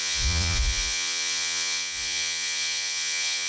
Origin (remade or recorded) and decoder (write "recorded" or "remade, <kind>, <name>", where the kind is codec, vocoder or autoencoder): remade, vocoder, Vocos